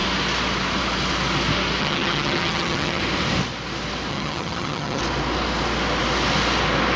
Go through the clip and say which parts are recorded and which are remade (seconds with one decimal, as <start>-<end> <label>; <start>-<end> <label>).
0.0-1.8 recorded; 1.8-3.0 remade; 3.0-4.1 recorded; 4.1-5.0 remade; 5.0-7.0 recorded